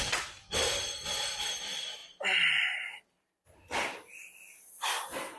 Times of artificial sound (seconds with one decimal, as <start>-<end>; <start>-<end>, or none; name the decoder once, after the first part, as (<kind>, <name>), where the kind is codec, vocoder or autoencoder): none

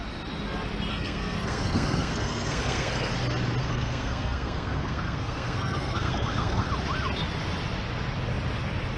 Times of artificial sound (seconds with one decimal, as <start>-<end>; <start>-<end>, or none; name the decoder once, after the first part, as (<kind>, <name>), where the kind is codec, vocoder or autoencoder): 0.9-3.1 (codec, SNAC); 3.6-6.7

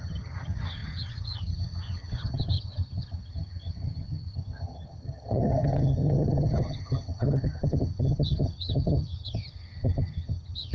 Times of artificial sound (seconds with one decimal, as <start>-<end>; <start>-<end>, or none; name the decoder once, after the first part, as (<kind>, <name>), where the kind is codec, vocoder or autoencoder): 0.0-10.7 (vocoder, HiFi-GAN)

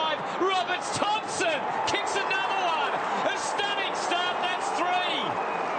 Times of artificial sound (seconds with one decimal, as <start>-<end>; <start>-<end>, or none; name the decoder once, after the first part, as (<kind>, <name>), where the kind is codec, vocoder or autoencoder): 0.7-1.6 (vocoder, BigVGAN v2)

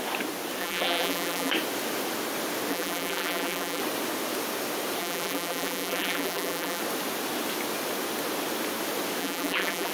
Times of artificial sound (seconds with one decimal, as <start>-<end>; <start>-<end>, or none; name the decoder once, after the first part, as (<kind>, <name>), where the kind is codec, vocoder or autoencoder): 0.6-1.5 (vocoder, BigVGAN v2); 2.7-3.8; 5.0-6.8; 9.2-9.9

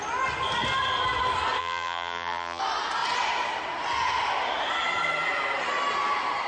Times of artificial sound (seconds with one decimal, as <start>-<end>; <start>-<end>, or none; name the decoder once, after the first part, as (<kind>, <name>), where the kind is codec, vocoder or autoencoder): 1.6-2.6 (vocoder, BigVGAN v2)

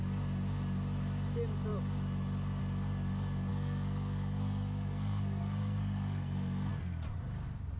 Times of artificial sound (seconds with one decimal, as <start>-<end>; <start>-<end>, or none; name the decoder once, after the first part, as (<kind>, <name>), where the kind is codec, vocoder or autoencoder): 3.5-6.7 (codec, SNAC)

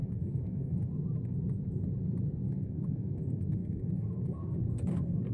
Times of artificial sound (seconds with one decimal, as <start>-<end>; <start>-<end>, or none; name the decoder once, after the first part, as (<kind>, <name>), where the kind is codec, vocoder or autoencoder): 0.0-0.9 (codec, SNAC); 2.5-5.3